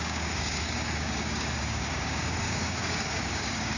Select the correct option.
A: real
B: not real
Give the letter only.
B